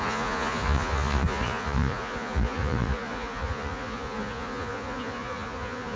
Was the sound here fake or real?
fake